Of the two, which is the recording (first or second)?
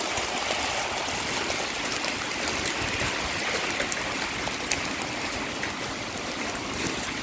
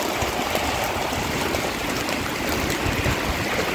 first